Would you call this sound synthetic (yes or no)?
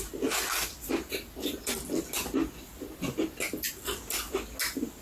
no